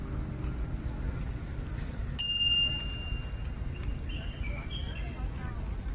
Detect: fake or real real